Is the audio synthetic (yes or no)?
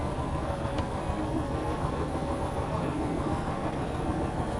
yes